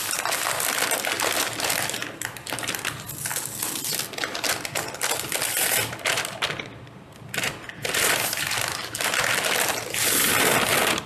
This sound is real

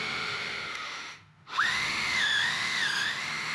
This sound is fake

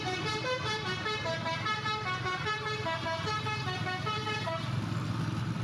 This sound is real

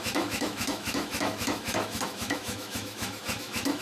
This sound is fake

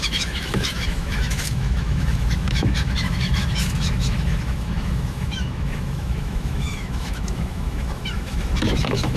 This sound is fake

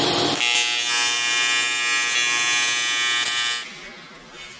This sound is real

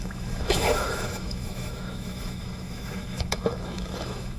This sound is fake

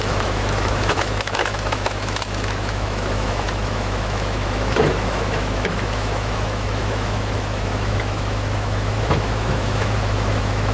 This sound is fake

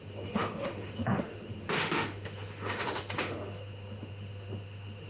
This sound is fake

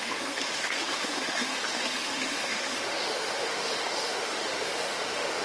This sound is fake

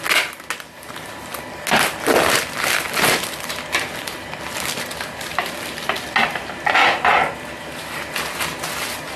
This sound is real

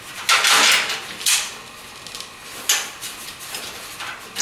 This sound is real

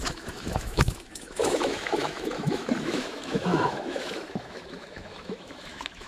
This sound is fake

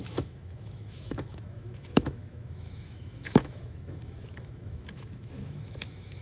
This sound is fake